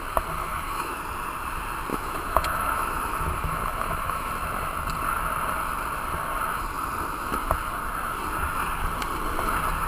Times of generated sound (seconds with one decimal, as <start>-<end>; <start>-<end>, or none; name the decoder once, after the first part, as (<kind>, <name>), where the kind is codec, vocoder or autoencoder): 0.4-1.0 (autoencoder, DAC-VAE); 1.9-4.3